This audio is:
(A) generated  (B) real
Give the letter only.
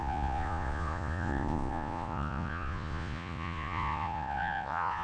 A